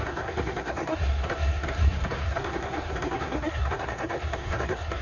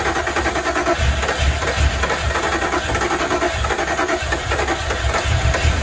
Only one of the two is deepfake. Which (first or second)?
first